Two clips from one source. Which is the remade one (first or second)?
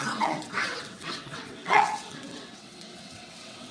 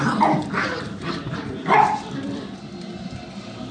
first